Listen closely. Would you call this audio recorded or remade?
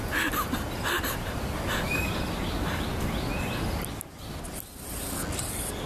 recorded